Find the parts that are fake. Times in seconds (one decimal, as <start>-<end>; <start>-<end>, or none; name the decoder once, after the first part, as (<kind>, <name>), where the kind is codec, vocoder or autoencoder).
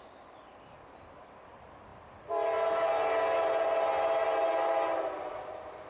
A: none